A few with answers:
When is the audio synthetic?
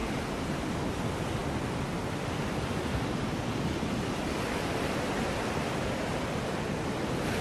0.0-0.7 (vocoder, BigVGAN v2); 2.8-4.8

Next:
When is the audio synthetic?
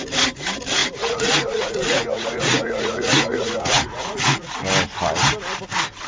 0.8-4.5 (vocoder, Vocos)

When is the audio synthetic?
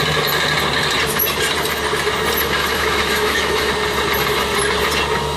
2.6-3.7 (autoencoder, DAC-VAE)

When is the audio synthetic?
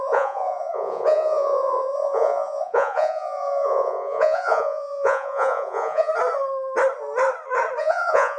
0.0-6.1 (vocoder, Vocos); 7.8-8.4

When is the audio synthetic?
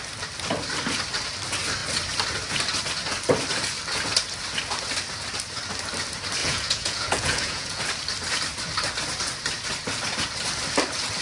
6.4-7.8 (vocoder, Vocos)